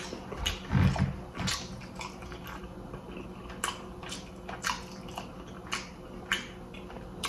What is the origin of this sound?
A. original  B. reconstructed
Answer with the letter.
A